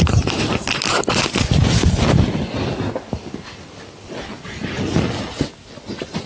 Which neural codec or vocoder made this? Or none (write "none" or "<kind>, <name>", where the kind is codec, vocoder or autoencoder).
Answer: none